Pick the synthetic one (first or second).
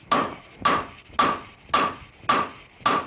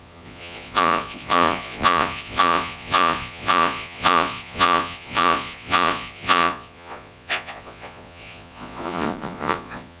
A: second